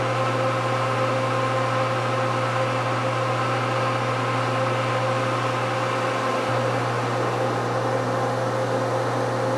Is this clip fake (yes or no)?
no